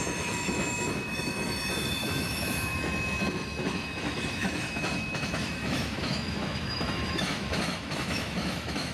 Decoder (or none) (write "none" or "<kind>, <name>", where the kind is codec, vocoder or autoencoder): autoencoder, DAC-VAE